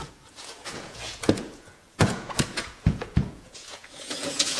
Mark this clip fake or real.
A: fake